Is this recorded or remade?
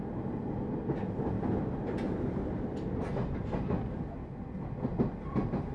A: recorded